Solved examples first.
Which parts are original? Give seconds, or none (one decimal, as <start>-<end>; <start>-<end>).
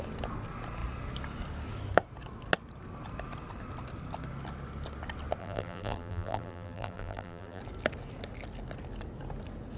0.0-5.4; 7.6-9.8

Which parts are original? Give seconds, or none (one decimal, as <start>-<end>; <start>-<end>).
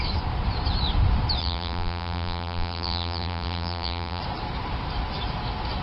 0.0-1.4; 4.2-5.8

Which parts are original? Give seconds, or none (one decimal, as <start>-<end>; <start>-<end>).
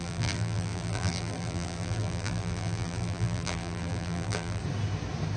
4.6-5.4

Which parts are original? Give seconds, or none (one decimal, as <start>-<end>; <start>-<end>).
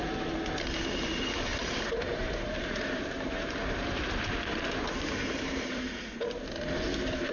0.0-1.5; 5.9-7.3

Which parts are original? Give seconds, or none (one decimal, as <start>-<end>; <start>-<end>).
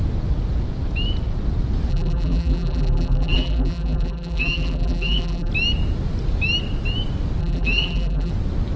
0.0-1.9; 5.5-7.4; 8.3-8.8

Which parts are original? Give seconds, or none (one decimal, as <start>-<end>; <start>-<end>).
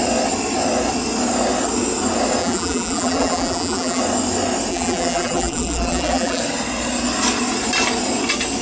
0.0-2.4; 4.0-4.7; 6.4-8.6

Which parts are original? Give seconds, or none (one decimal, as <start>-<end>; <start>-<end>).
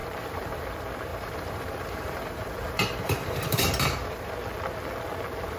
0.6-1.1; 4.3-5.6